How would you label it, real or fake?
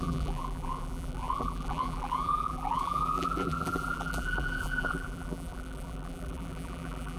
fake